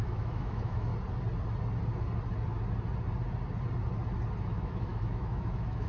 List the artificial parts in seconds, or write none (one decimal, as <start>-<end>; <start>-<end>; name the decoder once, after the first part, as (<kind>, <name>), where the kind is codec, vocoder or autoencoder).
0.0-0.9 (autoencoder, DAC-VAE); 4.4-5.9